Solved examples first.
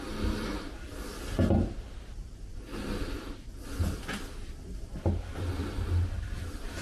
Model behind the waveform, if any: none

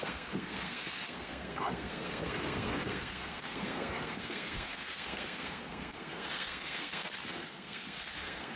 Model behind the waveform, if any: codec, SNAC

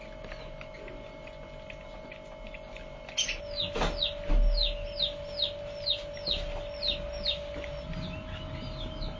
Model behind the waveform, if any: none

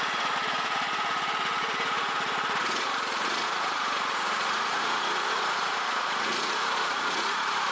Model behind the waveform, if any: vocoder, Vocos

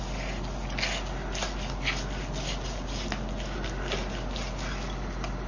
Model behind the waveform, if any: none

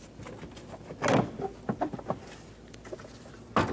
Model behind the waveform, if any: none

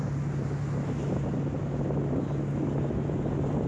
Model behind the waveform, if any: none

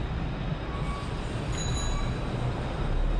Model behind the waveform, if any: none